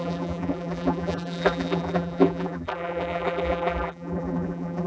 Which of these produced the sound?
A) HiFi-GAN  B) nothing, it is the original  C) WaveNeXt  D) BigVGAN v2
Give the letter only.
D